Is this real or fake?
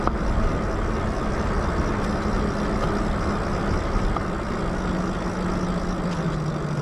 real